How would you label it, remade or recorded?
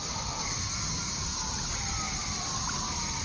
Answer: recorded